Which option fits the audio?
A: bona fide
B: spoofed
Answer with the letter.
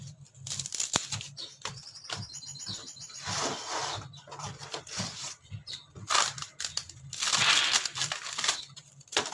B